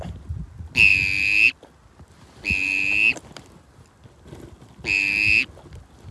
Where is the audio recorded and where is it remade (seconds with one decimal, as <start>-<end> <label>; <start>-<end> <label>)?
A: 0.0-6.1 recorded